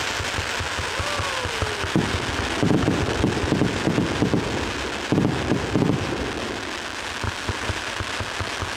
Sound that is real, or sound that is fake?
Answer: real